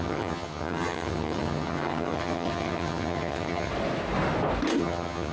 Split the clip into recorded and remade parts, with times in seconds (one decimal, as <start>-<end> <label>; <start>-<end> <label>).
0.0-3.7 remade; 3.7-4.8 recorded; 4.8-5.3 remade